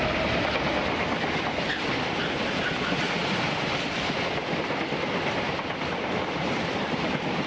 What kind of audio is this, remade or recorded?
recorded